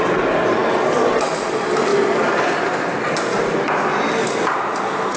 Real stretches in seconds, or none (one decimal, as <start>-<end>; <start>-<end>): 0.0-5.2